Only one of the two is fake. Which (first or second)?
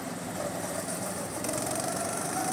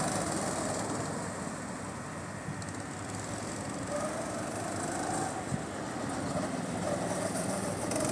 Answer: first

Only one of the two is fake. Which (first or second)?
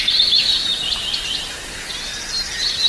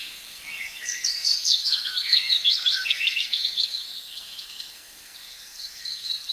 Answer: second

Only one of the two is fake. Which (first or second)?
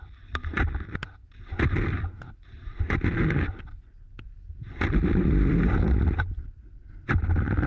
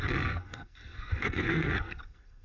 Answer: second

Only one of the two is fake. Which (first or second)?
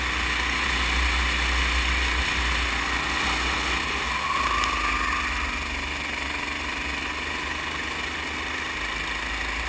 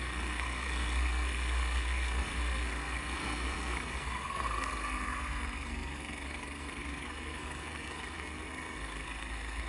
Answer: second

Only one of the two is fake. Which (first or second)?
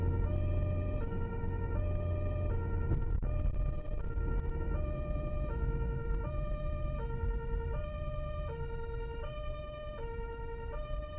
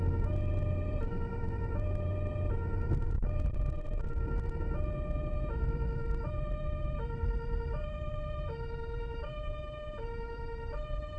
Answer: second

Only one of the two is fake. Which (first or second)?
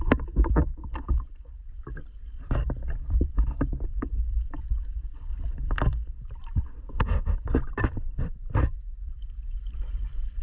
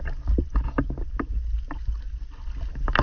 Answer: first